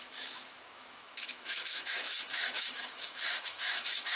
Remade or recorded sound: remade